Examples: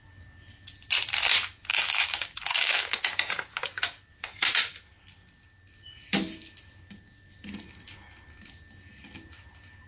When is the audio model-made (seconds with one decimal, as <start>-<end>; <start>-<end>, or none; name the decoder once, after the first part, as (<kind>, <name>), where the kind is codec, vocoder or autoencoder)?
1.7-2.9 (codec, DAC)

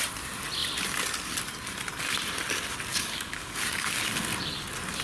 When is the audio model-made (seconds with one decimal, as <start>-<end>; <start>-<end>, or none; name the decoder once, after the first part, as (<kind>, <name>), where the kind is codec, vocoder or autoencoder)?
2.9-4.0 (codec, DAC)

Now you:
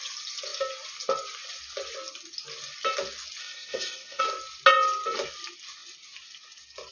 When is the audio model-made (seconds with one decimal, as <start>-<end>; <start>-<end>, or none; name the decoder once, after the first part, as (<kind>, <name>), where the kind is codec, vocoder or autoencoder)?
3.4-4.2 (codec, DAC)